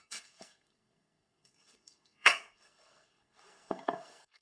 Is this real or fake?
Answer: fake